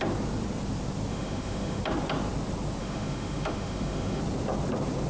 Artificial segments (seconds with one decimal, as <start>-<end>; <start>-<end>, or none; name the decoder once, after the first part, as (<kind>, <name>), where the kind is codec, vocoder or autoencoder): 1.1-1.8 (autoencoder, DAC-VAE); 2.8-4.2